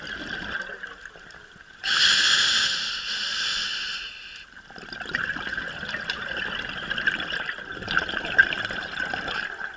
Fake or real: real